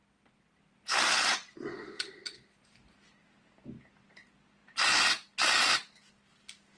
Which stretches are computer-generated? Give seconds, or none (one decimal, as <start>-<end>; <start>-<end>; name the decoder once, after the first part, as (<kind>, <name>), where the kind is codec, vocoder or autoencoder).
none

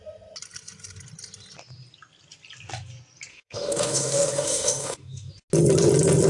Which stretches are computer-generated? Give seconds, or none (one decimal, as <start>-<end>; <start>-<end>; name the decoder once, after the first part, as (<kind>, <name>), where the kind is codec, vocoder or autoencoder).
3.3-5.3 (autoencoder, DAC-VAE)

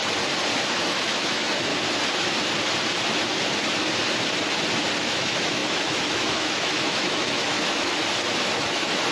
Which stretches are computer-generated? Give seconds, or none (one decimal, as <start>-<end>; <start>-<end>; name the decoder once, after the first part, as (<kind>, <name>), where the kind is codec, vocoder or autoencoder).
0.7-1.7 (autoencoder, DAC-VAE); 5.0-8.0; 8.6-9.1

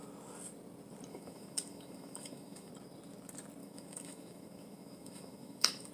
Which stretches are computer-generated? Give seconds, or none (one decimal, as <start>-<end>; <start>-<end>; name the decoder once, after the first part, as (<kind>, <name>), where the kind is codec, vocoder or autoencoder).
1.1-2.7 (autoencoder, DAC-VAE); 3.6-5.9

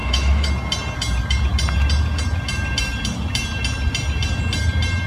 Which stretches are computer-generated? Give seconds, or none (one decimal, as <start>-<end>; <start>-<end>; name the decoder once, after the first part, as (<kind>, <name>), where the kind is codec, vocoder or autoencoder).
0.0-0.5 (autoencoder, DAC-VAE)

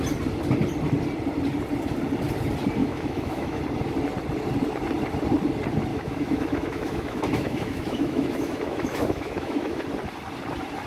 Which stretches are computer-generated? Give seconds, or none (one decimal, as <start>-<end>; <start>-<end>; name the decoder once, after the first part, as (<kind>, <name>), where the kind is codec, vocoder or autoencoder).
2.8-3.6 (autoencoder, DAC-VAE); 5.9-9.8

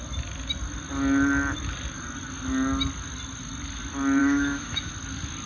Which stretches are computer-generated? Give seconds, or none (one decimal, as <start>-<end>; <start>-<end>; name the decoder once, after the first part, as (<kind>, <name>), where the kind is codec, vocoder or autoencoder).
4.2-4.9 (autoencoder, DAC-VAE)

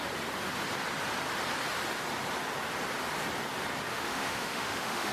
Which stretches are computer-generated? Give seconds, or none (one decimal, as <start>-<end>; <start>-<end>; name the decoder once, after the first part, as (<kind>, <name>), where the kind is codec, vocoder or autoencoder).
3.9-5.1 (autoencoder, DAC-VAE)